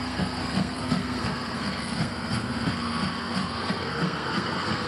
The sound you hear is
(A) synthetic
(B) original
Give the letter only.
A